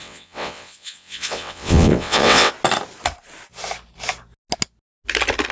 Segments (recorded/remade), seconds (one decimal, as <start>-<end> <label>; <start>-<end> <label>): 0.0-2.5 remade; 2.5-5.5 recorded